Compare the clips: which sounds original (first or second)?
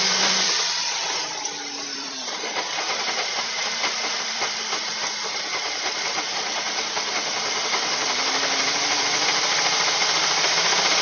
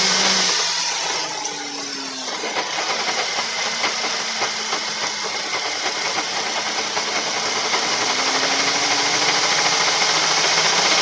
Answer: second